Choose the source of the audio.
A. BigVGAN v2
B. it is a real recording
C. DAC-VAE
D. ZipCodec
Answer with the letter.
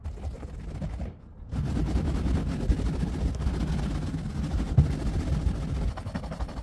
B